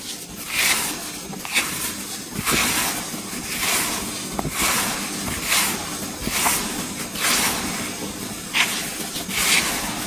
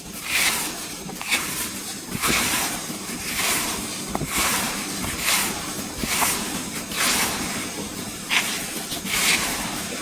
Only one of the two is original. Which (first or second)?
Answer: first